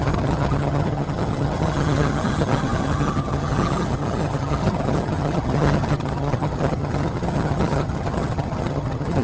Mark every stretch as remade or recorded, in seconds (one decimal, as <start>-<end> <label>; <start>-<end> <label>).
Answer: 0.0-9.2 remade